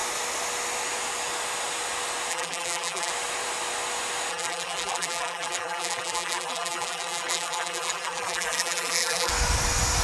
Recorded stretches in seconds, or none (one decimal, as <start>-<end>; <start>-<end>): 0.0-2.3; 3.1-4.3; 9.3-10.0